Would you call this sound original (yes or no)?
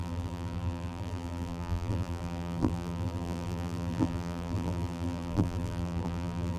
no